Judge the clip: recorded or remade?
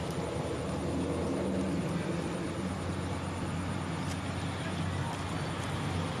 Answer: recorded